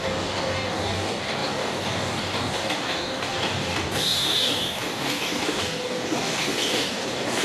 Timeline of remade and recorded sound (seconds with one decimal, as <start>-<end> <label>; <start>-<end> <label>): 0.0-7.4 remade